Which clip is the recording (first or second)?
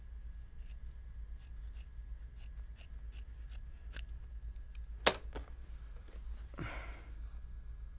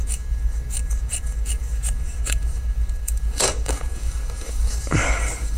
first